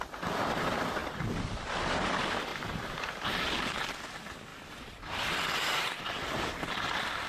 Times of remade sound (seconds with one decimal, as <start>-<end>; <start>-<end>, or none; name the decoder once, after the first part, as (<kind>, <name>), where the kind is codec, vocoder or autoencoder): 2.5-3.9 (vocoder, BigVGAN v2)

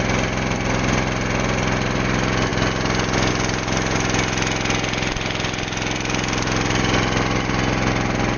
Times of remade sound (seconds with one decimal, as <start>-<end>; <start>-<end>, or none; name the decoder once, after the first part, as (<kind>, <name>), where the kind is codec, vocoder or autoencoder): none

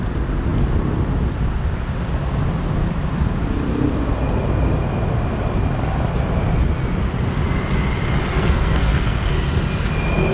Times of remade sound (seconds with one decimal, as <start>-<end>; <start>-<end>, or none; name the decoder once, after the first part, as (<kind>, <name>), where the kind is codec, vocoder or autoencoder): 8.3-9.3 (codec, SNAC)

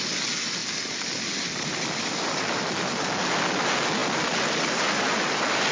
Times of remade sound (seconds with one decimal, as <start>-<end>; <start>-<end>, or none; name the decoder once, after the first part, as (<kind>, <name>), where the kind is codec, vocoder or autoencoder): none

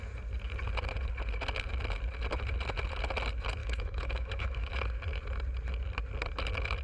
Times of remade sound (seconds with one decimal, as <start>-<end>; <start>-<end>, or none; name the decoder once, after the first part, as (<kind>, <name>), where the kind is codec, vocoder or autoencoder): 3.6-4.7 (autoencoder, DAC-VAE)

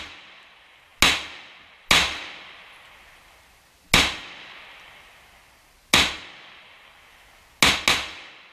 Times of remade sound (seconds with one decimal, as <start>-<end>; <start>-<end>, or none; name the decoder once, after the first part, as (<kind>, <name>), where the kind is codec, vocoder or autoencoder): none

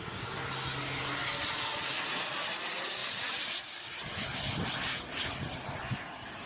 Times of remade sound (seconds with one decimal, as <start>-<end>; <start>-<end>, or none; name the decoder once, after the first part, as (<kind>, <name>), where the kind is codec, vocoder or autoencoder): none

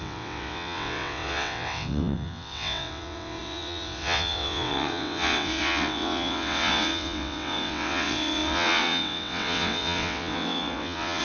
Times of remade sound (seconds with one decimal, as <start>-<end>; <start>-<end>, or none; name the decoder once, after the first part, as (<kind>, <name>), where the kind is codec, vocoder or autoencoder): 0.0-11.2 (vocoder, WaveNeXt)